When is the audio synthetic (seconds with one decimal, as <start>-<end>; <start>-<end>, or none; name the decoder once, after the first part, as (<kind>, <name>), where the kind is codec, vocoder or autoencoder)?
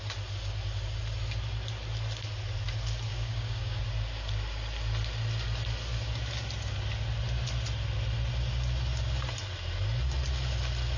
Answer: 3.1-3.8 (codec, DAC)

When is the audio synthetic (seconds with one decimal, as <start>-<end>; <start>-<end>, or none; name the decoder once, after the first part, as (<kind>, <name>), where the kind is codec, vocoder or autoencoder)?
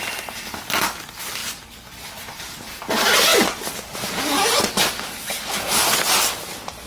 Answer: none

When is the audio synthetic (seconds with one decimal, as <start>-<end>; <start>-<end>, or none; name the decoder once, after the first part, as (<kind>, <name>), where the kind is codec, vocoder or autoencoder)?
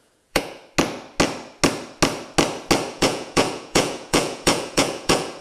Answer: 0.0-0.6 (vocoder, Vocos); 2.9-5.4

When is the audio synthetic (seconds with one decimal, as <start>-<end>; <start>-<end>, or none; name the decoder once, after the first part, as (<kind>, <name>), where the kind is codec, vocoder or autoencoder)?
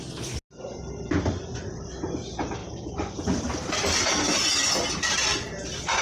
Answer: 2.6-4.9 (vocoder, BigVGAN v2)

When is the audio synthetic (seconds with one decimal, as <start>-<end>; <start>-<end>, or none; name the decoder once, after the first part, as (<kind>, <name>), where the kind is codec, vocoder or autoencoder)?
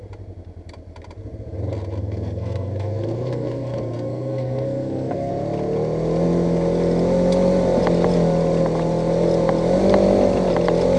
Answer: 2.0-5.3 (codec, SNAC)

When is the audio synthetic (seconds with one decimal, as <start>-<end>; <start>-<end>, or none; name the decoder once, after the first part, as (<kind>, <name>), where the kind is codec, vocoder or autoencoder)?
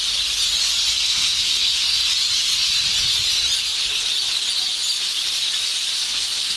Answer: 0.9-2.0 (codec, SNAC); 6.0-6.6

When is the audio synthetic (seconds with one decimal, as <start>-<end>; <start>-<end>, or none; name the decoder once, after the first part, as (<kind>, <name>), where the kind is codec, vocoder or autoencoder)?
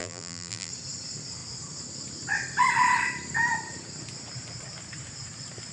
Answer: 0.0-0.7 (vocoder, BigVGAN v2)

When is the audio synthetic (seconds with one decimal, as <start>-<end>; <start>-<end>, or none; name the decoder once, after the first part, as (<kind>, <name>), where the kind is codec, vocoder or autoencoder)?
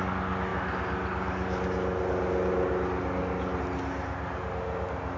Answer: none